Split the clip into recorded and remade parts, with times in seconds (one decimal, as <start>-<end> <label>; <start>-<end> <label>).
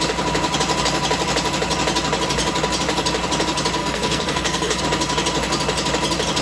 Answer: 0.0-3.8 recorded; 3.8-4.8 remade; 4.8-6.4 recorded